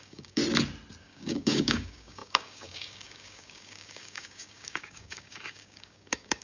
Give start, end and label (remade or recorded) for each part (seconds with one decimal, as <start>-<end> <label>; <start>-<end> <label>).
0.0-0.4 remade; 0.4-1.0 recorded; 1.0-6.4 remade

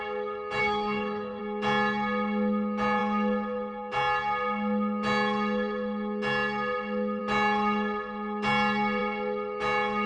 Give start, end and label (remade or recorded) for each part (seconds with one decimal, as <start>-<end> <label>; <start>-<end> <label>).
0.0-0.6 recorded; 0.6-1.4 remade; 1.4-10.1 recorded

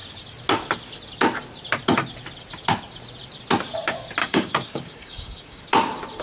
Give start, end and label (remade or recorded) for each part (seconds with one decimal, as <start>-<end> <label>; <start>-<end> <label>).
0.0-4.2 recorded; 4.2-5.6 remade; 5.6-6.2 recorded

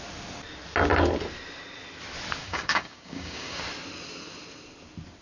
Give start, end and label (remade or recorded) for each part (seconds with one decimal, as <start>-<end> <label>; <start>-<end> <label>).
0.0-2.4 recorded; 2.4-3.6 remade; 3.6-5.2 recorded

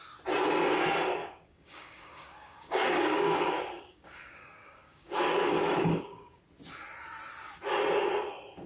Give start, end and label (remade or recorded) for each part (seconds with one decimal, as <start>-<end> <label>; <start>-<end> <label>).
0.0-1.2 recorded; 1.2-6.4 remade; 6.4-8.7 recorded